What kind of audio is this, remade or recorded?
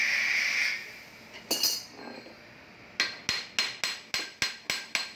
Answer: recorded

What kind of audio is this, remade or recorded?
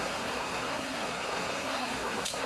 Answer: remade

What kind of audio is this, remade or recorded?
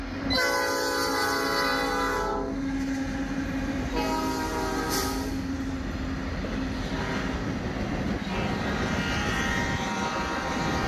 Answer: recorded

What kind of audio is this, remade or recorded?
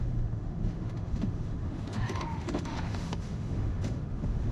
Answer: remade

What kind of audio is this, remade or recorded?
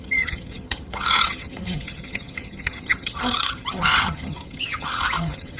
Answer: remade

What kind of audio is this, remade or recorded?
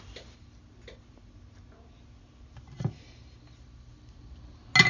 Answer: recorded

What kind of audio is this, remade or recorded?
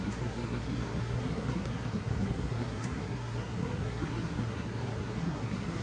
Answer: remade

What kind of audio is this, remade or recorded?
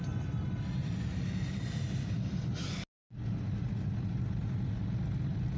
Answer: recorded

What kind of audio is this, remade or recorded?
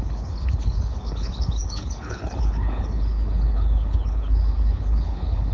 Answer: remade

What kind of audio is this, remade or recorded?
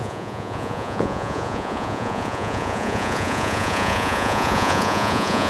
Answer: remade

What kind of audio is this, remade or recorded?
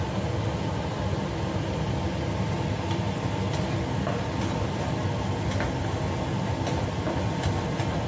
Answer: recorded